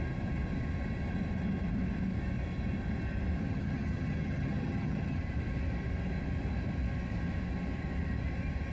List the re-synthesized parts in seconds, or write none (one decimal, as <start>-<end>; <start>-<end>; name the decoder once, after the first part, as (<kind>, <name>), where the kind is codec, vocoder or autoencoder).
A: 3.5-5.2 (vocoder, HiFi-GAN)